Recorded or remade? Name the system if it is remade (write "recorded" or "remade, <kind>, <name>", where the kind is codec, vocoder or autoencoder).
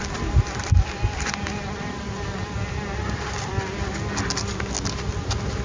recorded